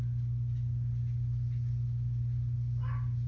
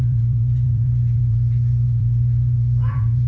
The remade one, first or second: second